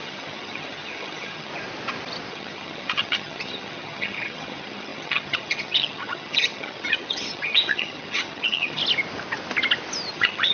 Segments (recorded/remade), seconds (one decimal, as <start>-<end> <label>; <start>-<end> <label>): 0.0-1.5 remade; 1.5-2.3 recorded; 2.3-8.8 remade; 8.8-10.1 recorded; 10.1-10.5 remade